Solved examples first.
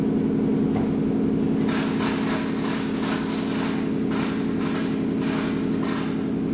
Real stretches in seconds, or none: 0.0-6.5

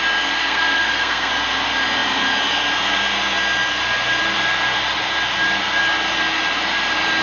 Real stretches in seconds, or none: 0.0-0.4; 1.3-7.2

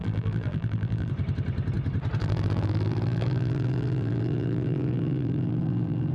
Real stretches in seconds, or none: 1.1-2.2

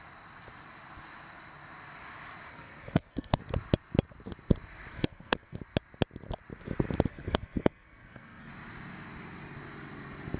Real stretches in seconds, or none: 0.0-2.5; 3.4-4.9; 5.6-7.1; 8.5-10.4

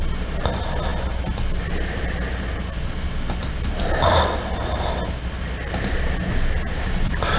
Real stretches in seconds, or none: 0.0-7.4